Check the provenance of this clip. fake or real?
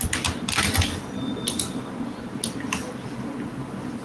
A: real